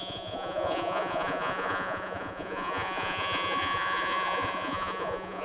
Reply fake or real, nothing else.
fake